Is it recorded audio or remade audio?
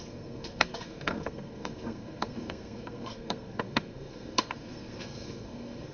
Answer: remade